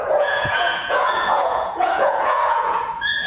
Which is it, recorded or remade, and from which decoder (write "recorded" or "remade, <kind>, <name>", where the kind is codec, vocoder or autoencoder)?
remade, vocoder, Vocos